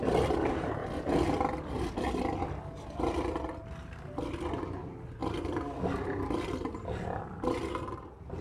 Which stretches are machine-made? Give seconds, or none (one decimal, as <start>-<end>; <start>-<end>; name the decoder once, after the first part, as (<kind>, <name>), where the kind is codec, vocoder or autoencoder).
none